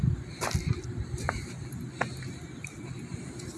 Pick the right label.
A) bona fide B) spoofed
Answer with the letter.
A